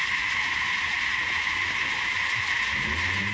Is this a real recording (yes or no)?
yes